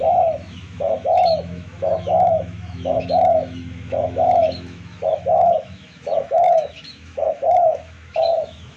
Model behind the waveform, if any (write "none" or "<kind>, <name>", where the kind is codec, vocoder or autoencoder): autoencoder, DAC-VAE